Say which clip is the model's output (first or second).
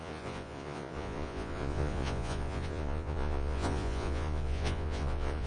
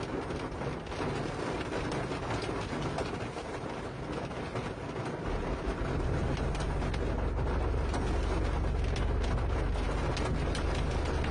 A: first